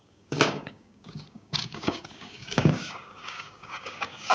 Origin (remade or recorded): remade